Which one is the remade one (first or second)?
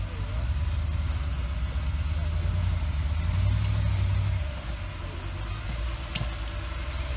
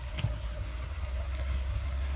second